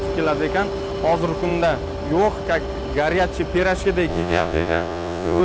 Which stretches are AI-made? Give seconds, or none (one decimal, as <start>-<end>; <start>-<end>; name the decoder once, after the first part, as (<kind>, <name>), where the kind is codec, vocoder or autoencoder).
4.1-5.4 (vocoder, Vocos)

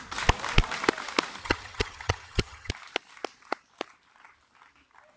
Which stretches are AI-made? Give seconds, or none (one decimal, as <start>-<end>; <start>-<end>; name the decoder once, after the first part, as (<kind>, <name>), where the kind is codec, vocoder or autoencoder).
1.4-2.7 (vocoder, HiFi-GAN)

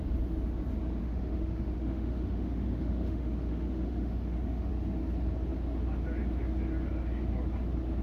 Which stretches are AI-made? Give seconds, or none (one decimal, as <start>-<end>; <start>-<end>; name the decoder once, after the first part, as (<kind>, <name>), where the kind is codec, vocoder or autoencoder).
1.0-4.7 (autoencoder, DAC-VAE)

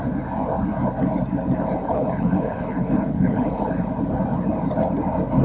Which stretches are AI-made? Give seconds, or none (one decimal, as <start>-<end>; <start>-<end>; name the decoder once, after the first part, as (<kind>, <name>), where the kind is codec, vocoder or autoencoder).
1.8-3.7 (codec, HILCodec)

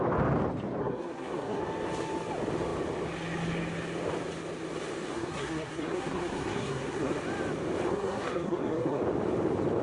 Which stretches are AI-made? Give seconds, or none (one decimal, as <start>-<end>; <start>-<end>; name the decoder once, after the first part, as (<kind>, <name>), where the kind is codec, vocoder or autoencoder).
0.8-1.6 (codec, SNAC); 5.1-7.2; 7.9-9.0